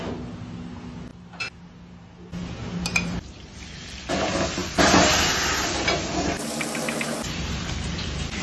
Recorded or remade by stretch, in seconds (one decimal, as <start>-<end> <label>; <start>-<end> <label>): 0.0-8.4 recorded